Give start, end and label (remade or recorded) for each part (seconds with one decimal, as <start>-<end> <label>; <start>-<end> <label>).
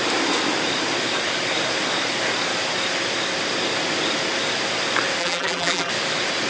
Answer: 0.0-5.2 recorded; 5.2-5.9 remade; 5.9-6.5 recorded